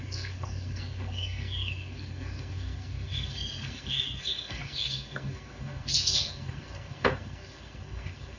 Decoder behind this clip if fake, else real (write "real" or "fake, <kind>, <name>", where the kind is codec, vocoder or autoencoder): fake, codec, SNAC